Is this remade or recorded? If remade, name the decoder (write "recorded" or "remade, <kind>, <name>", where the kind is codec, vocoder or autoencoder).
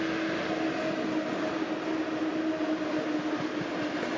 recorded